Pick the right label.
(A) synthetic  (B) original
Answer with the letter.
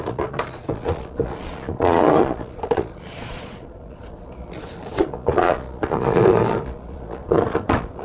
A